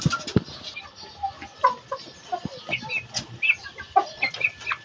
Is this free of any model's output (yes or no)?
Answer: yes